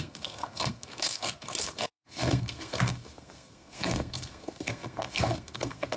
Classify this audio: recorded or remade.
remade